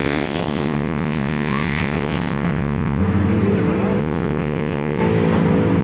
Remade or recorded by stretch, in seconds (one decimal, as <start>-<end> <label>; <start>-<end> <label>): 0.0-3.0 remade; 3.0-4.0 recorded; 4.0-5.0 remade; 5.0-5.8 recorded